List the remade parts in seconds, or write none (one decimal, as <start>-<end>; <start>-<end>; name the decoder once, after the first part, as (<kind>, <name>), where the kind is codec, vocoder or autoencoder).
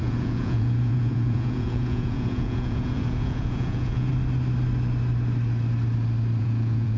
0.0-4.1 (vocoder, Vocos); 6.4-7.0